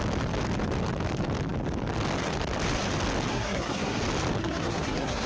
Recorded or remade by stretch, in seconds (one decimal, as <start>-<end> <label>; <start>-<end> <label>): 0.0-3.3 recorded; 3.3-4.0 remade; 4.0-4.4 recorded; 4.4-5.3 remade